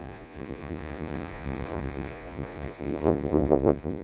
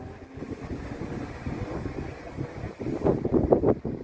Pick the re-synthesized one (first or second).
first